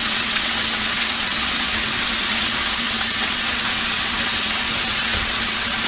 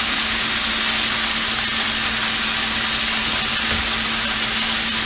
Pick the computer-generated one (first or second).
first